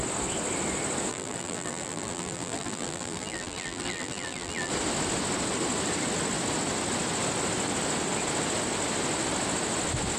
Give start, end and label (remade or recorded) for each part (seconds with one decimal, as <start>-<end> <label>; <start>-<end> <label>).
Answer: 0.0-1.1 recorded; 1.1-4.7 remade; 4.7-10.2 recorded